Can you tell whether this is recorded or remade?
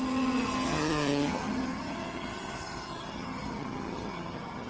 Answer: remade